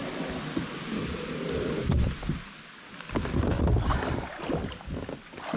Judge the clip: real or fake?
real